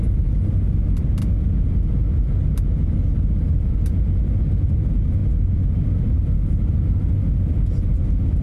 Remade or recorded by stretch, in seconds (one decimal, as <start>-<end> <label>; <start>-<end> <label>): 0.0-8.4 recorded